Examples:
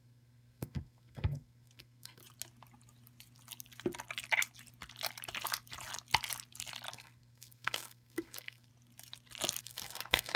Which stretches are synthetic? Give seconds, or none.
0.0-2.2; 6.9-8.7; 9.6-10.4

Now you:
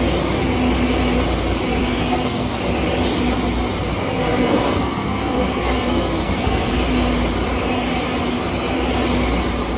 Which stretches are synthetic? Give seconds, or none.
1.8-2.6; 4.1-6.7

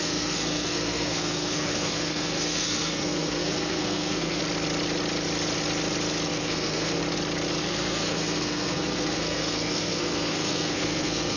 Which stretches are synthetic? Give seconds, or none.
0.0-4.4; 6.3-7.0; 7.6-11.4

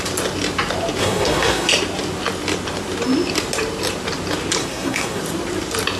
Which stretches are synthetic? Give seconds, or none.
1.0-1.7; 4.6-5.2